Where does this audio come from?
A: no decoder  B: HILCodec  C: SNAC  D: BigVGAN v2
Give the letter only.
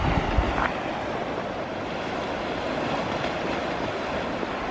A